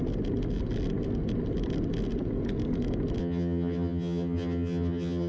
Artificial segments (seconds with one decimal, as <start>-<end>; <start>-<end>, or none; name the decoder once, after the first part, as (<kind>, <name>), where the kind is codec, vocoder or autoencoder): 3.2-5.3 (vocoder, HiFi-GAN)